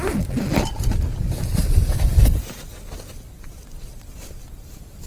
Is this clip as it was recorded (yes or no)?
yes